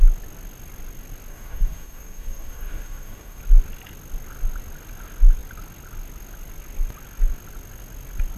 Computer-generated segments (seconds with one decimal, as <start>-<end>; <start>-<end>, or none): 1.3-3.4